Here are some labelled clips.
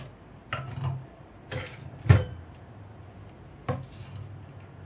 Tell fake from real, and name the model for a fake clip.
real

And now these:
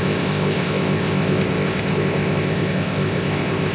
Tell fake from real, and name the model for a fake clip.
fake, codec, ZipCodec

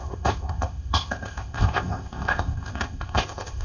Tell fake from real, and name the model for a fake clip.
fake, codec, ZipCodec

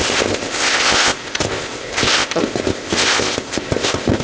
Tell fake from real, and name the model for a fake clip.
fake, codec, ZipCodec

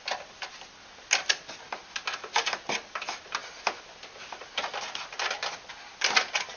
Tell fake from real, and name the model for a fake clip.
real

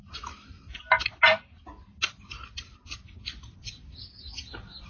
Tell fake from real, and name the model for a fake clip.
real